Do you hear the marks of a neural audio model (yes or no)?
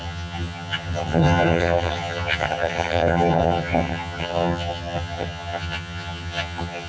yes